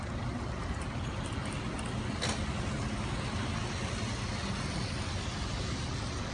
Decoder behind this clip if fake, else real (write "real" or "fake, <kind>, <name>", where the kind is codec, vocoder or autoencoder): real